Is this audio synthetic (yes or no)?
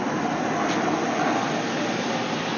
no